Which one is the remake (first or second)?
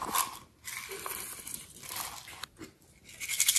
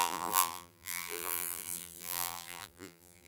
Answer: second